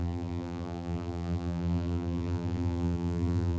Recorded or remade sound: remade